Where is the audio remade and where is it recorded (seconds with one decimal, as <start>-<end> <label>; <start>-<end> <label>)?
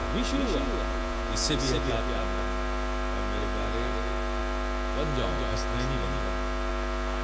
0.0-1.9 remade; 1.9-7.2 recorded